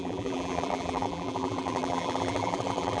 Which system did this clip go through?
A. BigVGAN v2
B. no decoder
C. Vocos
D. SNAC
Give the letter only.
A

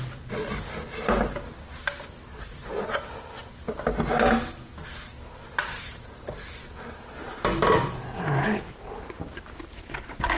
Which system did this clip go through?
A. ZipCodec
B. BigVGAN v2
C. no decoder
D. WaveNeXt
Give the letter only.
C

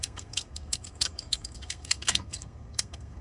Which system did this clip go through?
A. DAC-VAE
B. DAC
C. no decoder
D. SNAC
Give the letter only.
D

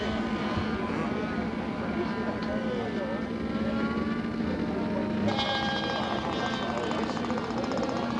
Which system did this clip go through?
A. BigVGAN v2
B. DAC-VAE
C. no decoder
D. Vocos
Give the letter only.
C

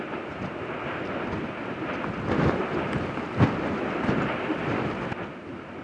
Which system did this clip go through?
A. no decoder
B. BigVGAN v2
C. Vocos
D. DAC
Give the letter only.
A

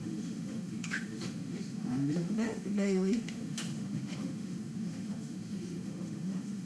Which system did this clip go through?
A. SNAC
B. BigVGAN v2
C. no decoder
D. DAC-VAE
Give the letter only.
D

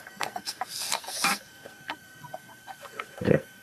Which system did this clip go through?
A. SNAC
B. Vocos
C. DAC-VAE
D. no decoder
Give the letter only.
A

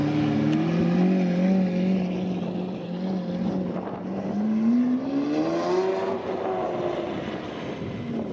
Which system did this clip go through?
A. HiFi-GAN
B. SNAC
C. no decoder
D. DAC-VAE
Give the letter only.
C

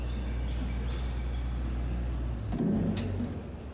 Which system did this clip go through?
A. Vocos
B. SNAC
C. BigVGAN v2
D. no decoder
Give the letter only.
D